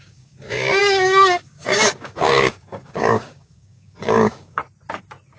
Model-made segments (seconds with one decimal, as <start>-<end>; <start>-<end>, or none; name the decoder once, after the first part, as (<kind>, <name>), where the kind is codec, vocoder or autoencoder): 0.0-4.6 (codec, DAC)